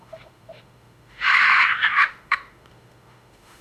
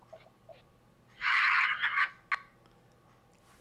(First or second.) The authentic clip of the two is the second